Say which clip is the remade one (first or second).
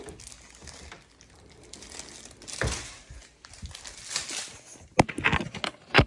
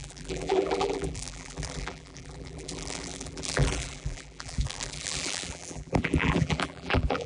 second